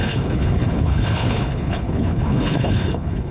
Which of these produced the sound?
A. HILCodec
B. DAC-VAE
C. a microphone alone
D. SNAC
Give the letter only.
A